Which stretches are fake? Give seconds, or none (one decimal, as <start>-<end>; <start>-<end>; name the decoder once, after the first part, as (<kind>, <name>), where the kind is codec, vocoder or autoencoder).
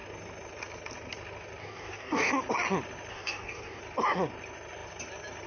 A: 1.6-2.3 (codec, DAC); 3.1-3.8